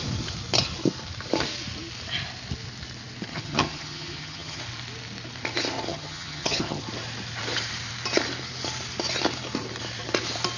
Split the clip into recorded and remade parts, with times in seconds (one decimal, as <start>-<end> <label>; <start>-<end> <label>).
0.0-3.3 recorded; 3.3-4.6 remade; 4.6-5.9 recorded; 5.9-6.8 remade; 6.8-10.6 recorded